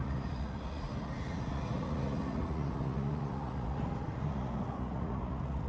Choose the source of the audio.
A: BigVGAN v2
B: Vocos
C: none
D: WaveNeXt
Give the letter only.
B